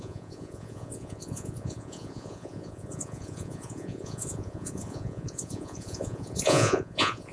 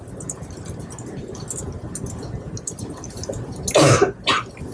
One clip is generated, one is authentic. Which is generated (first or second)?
first